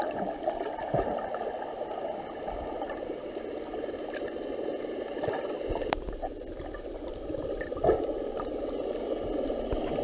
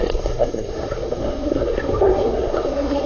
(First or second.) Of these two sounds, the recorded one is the first